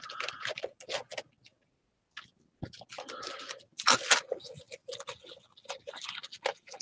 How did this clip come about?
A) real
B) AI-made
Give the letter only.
A